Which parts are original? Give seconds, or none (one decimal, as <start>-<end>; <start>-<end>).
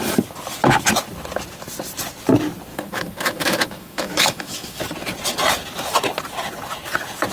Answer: 0.0-2.7; 4.8-7.3